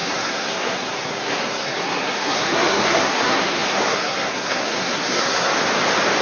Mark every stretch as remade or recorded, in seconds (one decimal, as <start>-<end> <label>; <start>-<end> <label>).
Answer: 0.0-5.5 remade; 5.5-6.2 recorded